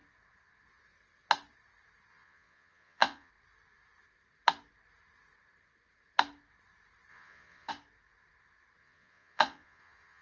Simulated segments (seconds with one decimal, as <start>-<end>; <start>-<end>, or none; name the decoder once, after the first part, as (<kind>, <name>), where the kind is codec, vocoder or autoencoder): 2.1-3.3 (vocoder, Vocos); 7.1-7.7; 8.8-10.2